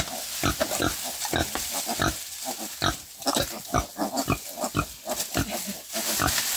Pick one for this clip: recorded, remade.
recorded